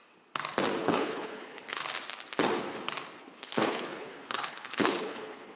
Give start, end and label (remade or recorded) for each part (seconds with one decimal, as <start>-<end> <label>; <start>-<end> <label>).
0.0-0.8 recorded; 0.8-1.8 remade; 1.8-3.2 recorded; 3.2-5.6 remade